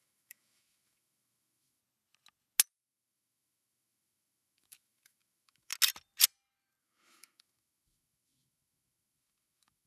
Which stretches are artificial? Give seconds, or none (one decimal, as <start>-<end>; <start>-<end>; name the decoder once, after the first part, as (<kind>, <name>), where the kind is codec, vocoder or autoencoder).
0.0-1.8 (autoencoder, DAC-VAE); 2.7-5.7; 6.8-9.9